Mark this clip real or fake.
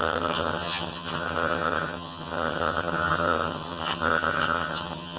fake